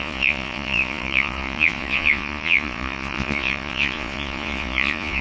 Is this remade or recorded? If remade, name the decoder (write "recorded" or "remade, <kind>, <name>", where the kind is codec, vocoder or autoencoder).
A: remade, vocoder, Vocos